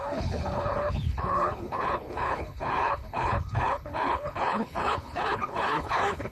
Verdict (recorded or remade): remade